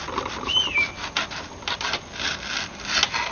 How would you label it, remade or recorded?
recorded